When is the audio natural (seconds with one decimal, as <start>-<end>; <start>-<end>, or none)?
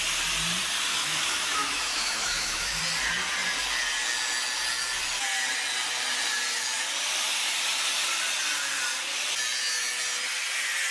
0.0-0.9; 2.8-10.9